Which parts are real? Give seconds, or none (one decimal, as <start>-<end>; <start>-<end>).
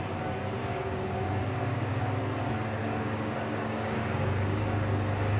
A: 0.0-0.6; 2.0-2.8; 4.6-5.4